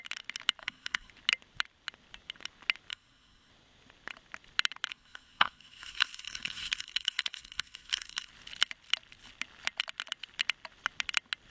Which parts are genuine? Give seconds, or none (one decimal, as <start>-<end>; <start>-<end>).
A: 0.0-0.6; 1.1-2.9; 3.5-4.9; 8.3-11.5